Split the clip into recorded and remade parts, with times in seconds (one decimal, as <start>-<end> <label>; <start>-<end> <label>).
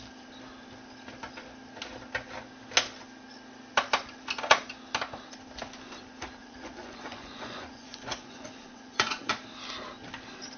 0.0-6.4 recorded; 6.4-9.3 remade; 9.3-10.6 recorded